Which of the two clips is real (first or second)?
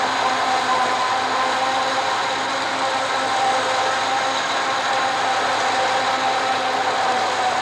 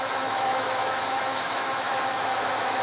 first